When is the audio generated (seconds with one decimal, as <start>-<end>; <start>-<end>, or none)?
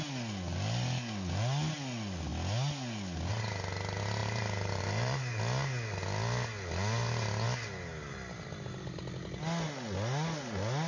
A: 4.2-5.4